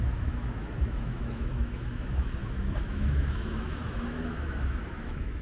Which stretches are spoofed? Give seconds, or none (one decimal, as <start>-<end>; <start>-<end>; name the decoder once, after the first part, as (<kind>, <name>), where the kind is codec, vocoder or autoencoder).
0.0-5.4 (autoencoder, DAC-VAE)